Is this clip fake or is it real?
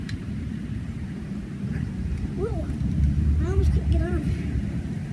fake